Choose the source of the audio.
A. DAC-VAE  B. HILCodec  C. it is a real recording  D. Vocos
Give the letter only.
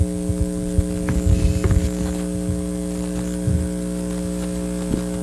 C